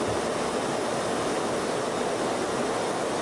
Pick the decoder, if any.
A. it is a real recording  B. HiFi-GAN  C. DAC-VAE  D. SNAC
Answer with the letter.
A